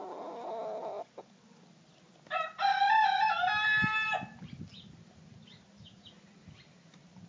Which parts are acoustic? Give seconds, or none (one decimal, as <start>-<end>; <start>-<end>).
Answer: 0.0-7.3